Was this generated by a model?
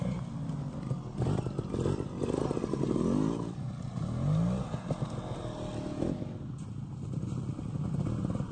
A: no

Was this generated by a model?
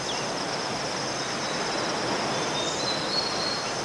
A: no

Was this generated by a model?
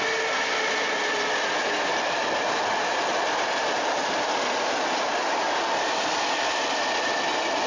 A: no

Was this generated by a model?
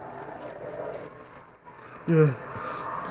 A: no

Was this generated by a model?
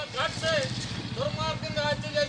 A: no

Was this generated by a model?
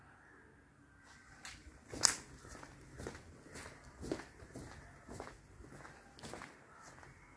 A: no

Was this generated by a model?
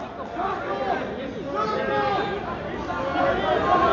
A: no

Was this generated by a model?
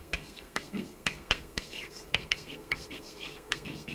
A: yes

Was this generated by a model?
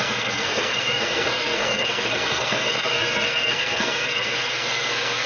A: yes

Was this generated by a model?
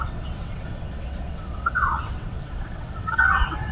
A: yes